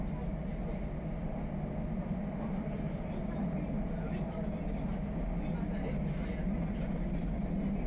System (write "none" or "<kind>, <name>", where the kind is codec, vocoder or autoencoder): none